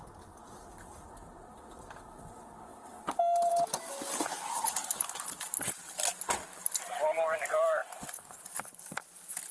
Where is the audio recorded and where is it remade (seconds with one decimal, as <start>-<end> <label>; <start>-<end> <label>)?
0.0-2.7 recorded; 2.7-3.5 remade; 3.5-4.8 recorded; 4.8-5.8 remade; 5.8-9.5 recorded